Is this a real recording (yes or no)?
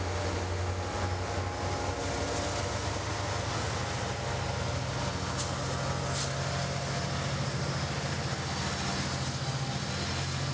yes